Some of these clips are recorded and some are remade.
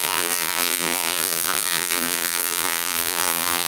remade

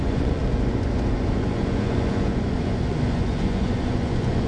remade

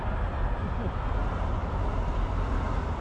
recorded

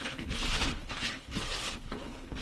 remade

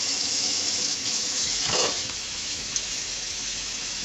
remade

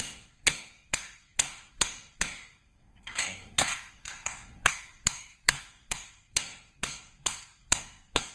remade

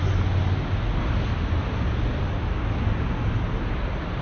recorded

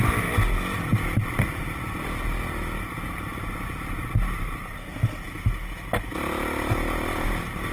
recorded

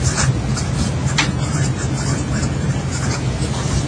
recorded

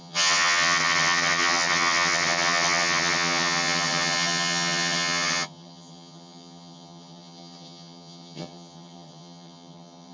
remade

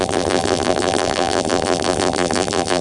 remade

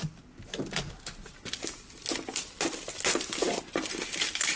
recorded